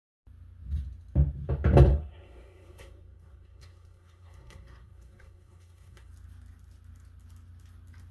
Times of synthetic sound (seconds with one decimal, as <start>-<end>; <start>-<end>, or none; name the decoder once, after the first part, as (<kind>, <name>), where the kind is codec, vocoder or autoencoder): 1.9-6.1 (codec, SNAC)